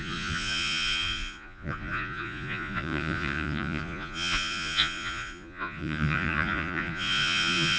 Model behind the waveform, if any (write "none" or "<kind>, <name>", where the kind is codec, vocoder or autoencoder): vocoder, Vocos